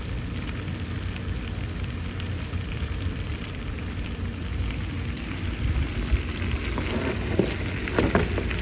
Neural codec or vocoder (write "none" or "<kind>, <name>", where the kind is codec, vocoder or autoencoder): none